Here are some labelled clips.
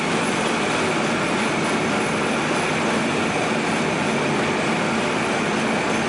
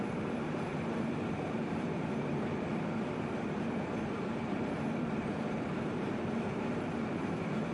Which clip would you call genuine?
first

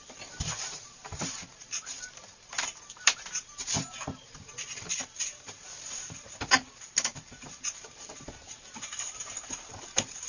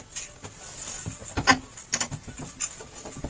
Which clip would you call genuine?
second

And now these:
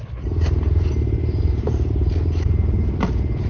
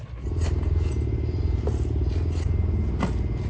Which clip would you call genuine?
second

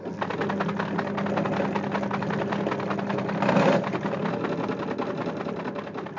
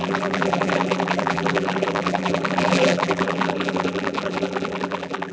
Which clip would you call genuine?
first